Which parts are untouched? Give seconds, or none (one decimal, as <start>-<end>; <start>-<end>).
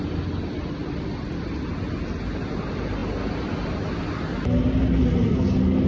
0.0-5.9